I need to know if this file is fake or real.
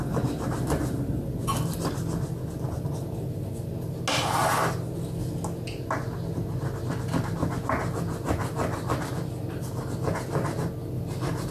real